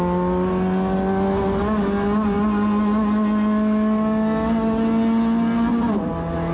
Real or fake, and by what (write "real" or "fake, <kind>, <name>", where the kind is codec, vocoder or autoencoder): real